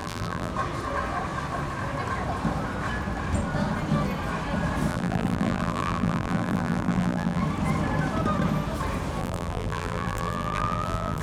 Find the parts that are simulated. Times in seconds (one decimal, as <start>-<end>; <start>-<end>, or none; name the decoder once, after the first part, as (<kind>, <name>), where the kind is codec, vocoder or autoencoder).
0.0-0.5 (vocoder, BigVGAN v2); 4.9-7.4; 9.2-11.2